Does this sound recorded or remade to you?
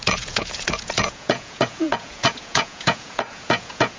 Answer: remade